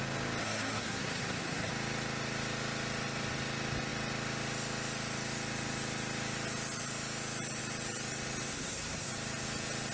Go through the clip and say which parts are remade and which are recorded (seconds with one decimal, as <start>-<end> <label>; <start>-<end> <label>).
0.0-0.4 recorded; 0.4-1.7 remade; 1.7-8.5 recorded; 8.5-9.1 remade; 9.1-9.9 recorded